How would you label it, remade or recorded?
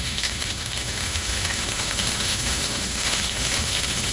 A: remade